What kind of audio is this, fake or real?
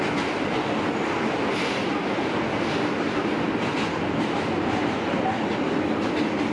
real